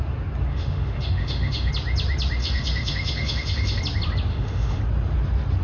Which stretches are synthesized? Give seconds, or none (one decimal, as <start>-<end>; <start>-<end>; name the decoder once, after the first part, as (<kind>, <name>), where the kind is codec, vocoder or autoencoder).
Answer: 0.5-1.7 (autoencoder, DAC-VAE); 2.4-3.8; 4.3-4.8